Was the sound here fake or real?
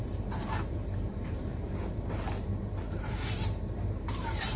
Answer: fake